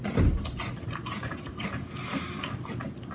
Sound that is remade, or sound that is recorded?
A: recorded